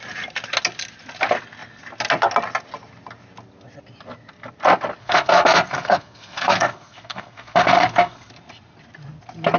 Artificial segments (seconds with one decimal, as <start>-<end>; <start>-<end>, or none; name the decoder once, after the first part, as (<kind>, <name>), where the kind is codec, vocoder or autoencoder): 5.0-8.3 (codec, SNAC)